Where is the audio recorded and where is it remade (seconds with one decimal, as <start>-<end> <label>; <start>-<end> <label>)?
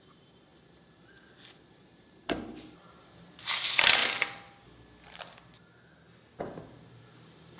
0.0-4.0 remade; 4.0-6.4 recorded; 6.4-7.6 remade